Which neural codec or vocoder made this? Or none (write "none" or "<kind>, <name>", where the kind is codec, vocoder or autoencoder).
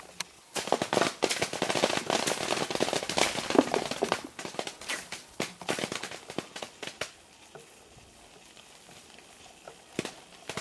none